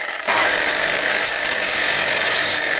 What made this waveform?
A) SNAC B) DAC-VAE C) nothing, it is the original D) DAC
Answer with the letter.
D